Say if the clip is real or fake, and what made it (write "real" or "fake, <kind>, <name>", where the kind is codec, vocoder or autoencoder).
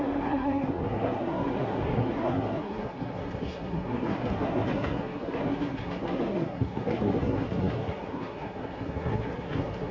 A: fake, codec, SNAC